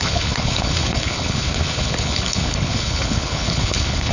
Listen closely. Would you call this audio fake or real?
fake